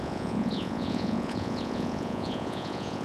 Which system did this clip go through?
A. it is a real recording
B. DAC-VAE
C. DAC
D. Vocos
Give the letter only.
D